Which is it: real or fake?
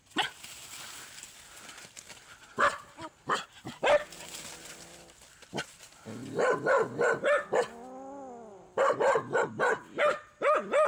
real